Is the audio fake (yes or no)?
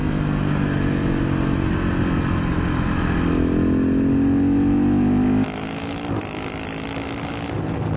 no